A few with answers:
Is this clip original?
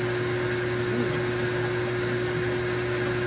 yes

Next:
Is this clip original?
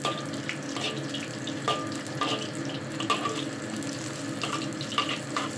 yes